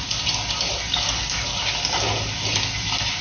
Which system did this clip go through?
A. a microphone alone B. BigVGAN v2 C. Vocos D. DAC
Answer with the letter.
A